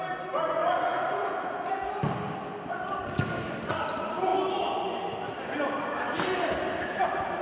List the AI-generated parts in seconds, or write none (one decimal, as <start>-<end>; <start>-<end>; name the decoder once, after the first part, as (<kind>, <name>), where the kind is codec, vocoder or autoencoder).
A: 0.6-1.7 (vocoder, Vocos)

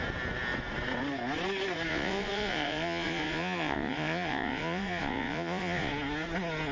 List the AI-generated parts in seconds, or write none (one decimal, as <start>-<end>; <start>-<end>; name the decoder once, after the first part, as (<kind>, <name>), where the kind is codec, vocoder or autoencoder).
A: 1.9-5.9 (vocoder, Vocos)